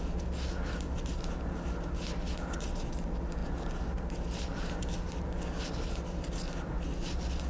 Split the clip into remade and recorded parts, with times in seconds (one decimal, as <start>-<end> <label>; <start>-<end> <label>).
0.0-7.5 recorded